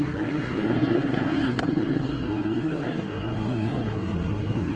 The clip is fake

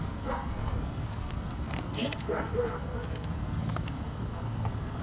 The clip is fake